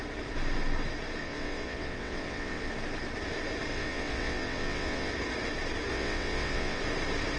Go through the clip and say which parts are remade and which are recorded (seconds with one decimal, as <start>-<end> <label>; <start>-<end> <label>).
0.0-1.2 recorded; 1.2-2.7 remade; 2.7-3.7 recorded; 3.7-5.1 remade; 5.1-5.9 recorded; 5.9-6.8 remade; 6.8-7.4 recorded